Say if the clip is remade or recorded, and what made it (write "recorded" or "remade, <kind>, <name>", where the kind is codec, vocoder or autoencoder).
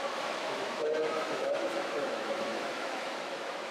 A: remade, autoencoder, DAC-VAE